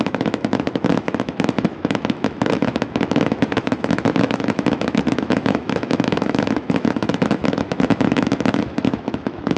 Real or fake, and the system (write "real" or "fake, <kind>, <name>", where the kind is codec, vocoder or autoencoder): fake, autoencoder, DAC-VAE